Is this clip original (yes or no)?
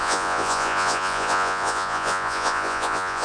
no